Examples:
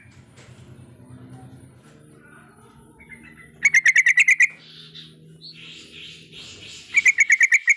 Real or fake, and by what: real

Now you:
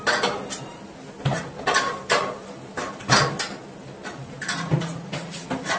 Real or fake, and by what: real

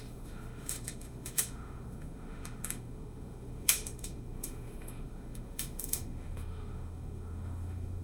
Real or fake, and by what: fake, autoencoder, DAC-VAE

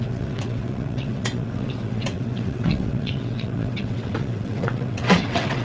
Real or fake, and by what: fake, vocoder, WaveNeXt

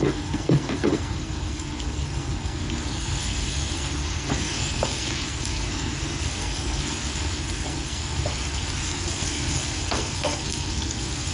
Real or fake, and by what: fake, codec, SNAC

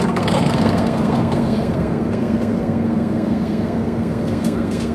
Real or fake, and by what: fake, codec, SNAC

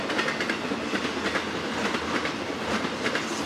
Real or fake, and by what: real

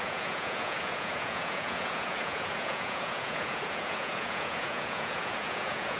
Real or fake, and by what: fake, vocoder, Vocos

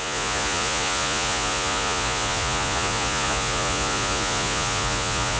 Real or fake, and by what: fake, vocoder, Vocos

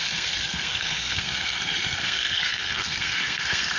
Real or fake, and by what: fake, codec, SNAC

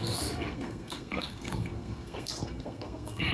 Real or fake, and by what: fake, codec, SNAC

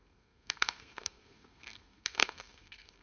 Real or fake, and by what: fake, codec, SNAC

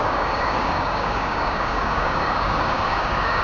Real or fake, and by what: fake, codec, DAC